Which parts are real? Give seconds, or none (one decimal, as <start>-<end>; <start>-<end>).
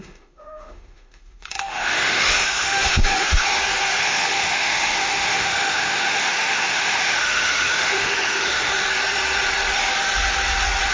3.5-4.0; 8.7-10.9